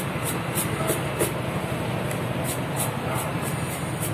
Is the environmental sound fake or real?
real